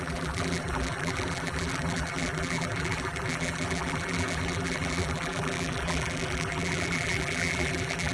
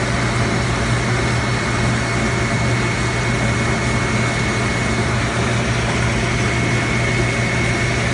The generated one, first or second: first